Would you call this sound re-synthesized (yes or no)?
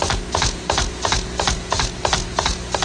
yes